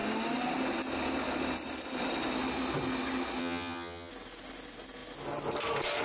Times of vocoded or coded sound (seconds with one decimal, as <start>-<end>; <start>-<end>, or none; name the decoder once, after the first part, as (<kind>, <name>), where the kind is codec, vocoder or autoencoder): 3.4-4.1 (vocoder, HiFi-GAN)